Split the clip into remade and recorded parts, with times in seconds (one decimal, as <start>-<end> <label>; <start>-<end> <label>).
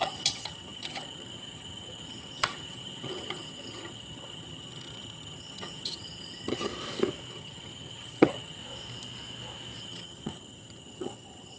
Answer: 0.0-6.7 remade; 6.7-7.3 recorded; 7.3-8.6 remade; 8.6-9.8 recorded; 9.8-11.6 remade